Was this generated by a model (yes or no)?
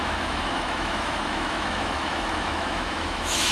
yes